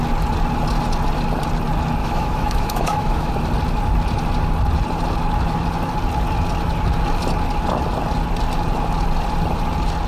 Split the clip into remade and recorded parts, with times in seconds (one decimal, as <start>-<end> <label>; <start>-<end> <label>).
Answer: 0.0-2.0 recorded; 2.0-3.3 remade; 3.3-10.1 recorded